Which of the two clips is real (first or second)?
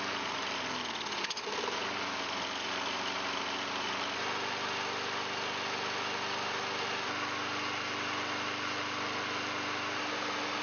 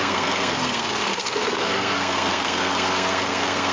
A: first